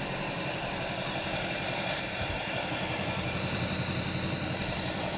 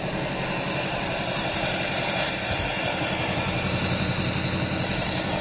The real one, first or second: second